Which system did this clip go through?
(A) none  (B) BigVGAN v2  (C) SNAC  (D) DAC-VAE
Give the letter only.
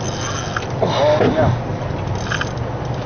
A